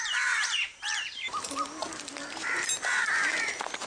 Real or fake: fake